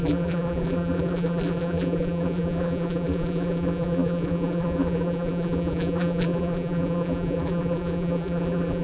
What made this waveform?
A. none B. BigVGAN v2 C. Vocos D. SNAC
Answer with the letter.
B